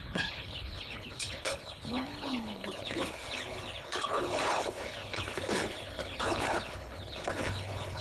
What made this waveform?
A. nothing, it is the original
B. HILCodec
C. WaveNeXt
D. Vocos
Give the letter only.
B